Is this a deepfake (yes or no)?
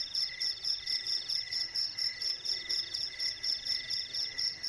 no